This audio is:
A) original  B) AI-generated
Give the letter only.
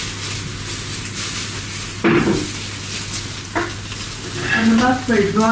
A